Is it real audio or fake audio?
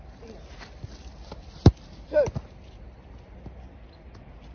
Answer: real